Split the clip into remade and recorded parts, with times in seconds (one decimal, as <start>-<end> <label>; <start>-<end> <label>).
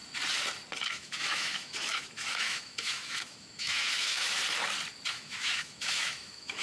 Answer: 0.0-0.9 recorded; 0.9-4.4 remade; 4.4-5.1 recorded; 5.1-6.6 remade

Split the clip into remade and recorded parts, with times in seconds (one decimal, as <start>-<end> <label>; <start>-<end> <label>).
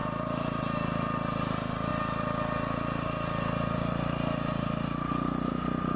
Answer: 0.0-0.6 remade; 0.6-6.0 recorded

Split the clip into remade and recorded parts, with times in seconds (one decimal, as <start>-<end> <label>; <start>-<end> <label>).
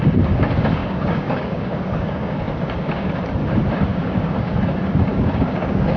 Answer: 0.0-0.8 recorded; 0.8-3.1 remade; 3.1-3.9 recorded; 3.9-4.6 remade; 4.6-5.1 recorded; 5.1-6.0 remade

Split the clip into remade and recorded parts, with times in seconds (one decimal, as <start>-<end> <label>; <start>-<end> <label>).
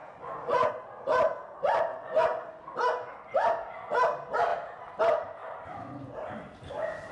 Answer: 0.0-0.7 remade; 0.7-1.9 recorded; 1.9-2.6 remade; 2.6-7.1 recorded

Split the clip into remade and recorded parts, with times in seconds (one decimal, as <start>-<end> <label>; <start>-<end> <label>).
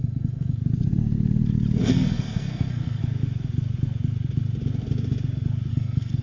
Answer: 0.0-0.6 remade; 0.6-1.8 recorded; 1.8-3.0 remade; 3.0-5.7 recorded; 5.7-6.2 remade